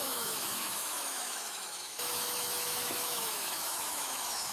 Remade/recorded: remade